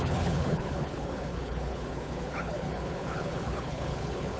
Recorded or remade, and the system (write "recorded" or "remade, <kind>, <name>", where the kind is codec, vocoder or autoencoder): remade, codec, HILCodec